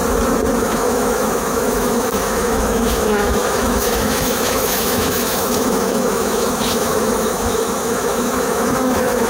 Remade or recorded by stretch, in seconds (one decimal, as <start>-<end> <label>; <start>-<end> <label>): 0.0-0.6 recorded; 0.6-9.3 remade